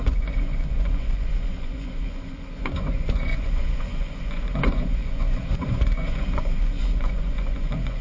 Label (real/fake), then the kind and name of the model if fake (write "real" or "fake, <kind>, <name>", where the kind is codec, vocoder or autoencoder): fake, vocoder, Vocos